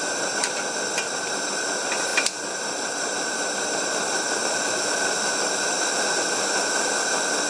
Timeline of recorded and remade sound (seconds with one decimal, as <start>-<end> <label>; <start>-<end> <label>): 0.0-7.5 recorded

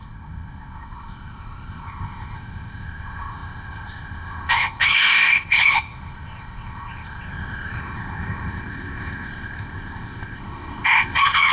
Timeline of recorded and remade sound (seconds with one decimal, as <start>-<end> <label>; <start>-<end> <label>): 0.0-11.5 remade

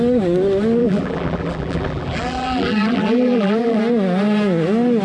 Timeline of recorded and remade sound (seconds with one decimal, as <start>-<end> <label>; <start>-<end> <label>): 0.0-0.8 recorded; 0.8-3.8 remade; 3.8-5.0 recorded

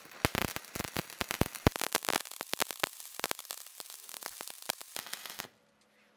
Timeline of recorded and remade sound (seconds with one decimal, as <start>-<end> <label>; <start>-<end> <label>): 0.0-0.4 recorded; 0.4-1.0 remade; 1.0-6.2 recorded

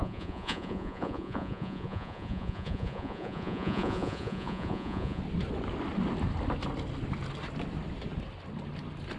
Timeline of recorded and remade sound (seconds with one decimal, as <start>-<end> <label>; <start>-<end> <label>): 0.0-5.2 remade; 5.2-9.2 recorded

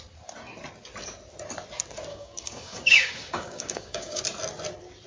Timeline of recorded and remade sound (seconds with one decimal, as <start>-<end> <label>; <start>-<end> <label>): 0.0-2.1 recorded; 2.1-4.2 remade; 4.2-5.1 recorded

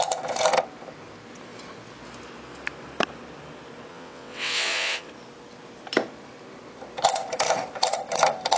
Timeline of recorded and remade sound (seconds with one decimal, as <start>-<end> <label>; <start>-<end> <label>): 0.0-3.9 recorded; 3.9-5.1 remade; 5.1-8.6 recorded